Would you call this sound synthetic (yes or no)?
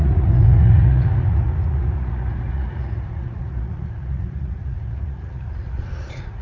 yes